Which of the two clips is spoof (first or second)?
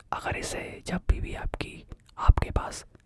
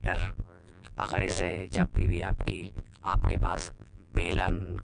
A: second